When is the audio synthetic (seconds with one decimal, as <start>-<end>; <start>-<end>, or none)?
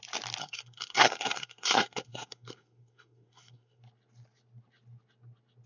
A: 0.4-3.8